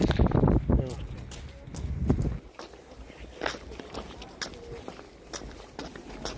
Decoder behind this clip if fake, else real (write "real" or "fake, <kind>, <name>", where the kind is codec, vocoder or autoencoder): real